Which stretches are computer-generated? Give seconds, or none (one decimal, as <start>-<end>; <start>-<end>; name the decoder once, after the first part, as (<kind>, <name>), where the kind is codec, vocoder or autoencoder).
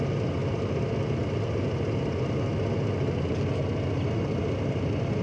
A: none